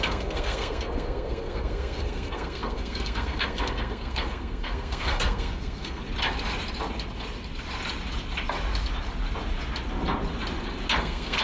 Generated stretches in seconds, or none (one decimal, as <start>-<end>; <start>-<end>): 0.0-6.0; 11.0-11.4